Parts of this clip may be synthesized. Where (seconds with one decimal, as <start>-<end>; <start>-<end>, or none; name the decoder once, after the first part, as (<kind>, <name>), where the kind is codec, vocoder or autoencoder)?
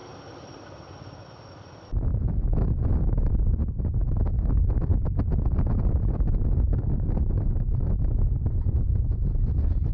none